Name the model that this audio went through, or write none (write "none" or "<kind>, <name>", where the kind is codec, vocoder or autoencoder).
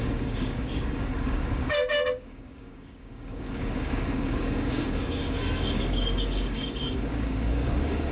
codec, DAC